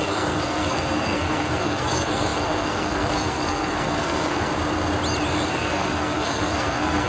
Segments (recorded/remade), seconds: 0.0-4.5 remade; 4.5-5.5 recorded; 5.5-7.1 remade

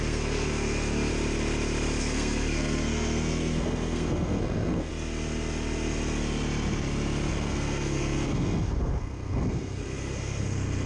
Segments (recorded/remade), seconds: 0.0-1.1 remade; 1.1-2.0 recorded; 2.0-4.9 remade; 4.9-7.3 recorded; 7.3-10.9 remade

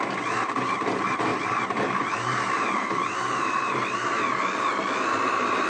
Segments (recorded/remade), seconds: 0.0-5.7 recorded

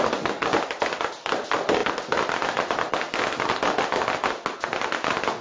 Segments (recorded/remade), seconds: 0.0-5.4 recorded

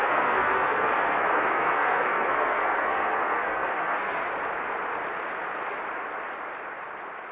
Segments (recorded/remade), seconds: 0.0-4.2 remade; 4.2-7.3 recorded